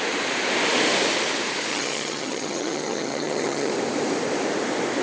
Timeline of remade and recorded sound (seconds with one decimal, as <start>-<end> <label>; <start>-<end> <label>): 0.0-1.7 recorded; 1.7-3.7 remade; 3.7-5.0 recorded